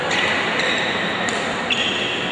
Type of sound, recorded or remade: recorded